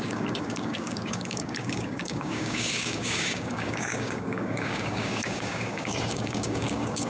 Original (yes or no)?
no